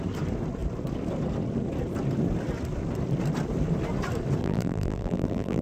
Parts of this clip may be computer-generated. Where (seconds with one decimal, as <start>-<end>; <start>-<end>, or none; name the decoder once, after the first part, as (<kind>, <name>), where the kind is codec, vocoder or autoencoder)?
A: 4.4-5.6 (vocoder, BigVGAN v2)